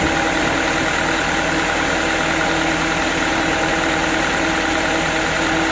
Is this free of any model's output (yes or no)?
yes